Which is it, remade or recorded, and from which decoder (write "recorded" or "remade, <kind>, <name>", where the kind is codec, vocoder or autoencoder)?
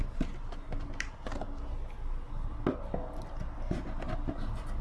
recorded